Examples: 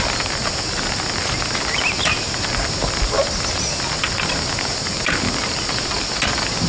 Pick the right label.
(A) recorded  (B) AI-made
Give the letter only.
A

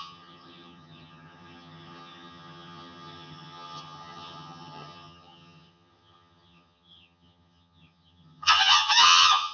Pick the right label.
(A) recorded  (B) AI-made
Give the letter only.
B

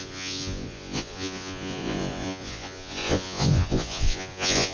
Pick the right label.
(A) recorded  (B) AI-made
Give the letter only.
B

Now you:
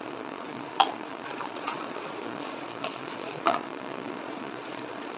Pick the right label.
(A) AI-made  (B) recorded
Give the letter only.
A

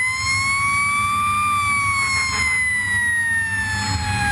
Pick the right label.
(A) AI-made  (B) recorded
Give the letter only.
B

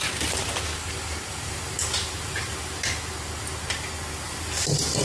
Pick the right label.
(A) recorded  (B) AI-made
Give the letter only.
A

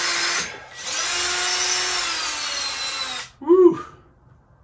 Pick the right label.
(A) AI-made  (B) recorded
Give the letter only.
B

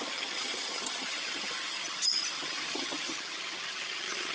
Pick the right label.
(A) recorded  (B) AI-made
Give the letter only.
B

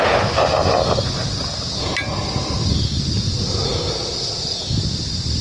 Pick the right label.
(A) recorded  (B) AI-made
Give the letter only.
A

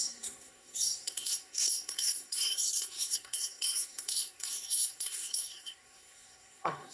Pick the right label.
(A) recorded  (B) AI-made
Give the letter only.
B